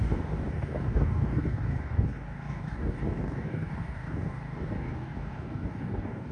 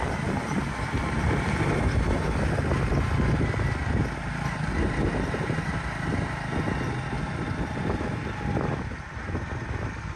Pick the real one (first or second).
second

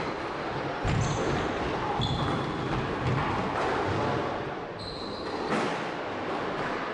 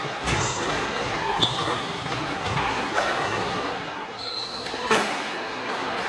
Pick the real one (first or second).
first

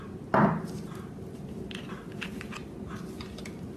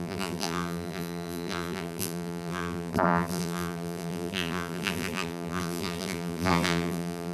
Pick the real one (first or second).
first